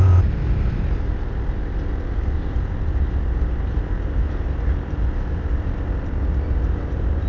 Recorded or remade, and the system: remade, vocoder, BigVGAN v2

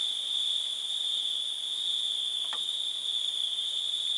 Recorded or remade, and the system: remade, vocoder, BigVGAN v2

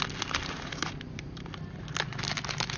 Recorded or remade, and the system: remade, vocoder, BigVGAN v2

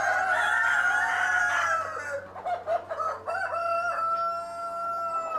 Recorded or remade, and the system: recorded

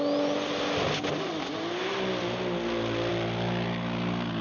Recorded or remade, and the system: recorded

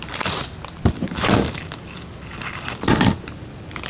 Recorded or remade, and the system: recorded